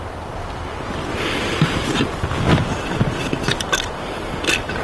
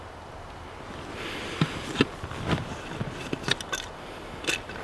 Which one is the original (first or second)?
second